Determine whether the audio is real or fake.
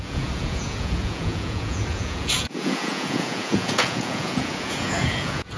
fake